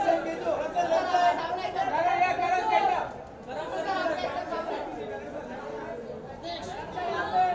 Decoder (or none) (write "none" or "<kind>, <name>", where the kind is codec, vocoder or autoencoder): none